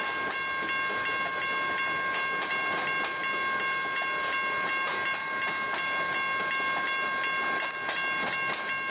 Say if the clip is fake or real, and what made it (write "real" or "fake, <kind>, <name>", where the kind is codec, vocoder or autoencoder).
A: real